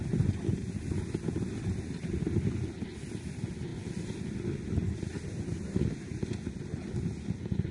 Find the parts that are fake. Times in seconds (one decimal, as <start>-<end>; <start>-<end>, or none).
none